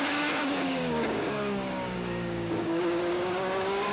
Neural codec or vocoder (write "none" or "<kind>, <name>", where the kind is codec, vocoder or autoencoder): codec, DAC